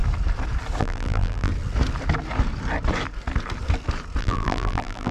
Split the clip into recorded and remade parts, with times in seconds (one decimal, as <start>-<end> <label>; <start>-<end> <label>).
0.0-0.8 recorded; 0.8-1.5 remade; 1.5-4.2 recorded; 4.2-5.1 remade